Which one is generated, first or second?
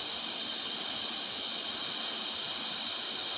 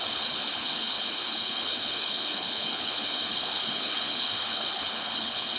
second